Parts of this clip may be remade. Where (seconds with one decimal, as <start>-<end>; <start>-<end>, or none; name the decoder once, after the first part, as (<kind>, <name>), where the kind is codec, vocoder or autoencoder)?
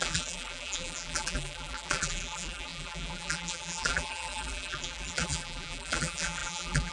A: 0.0-6.9 (vocoder, BigVGAN v2)